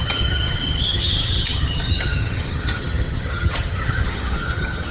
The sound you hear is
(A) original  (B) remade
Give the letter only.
B